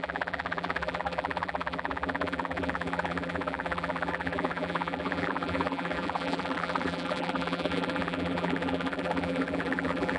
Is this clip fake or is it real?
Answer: fake